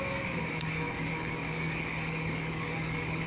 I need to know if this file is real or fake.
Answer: fake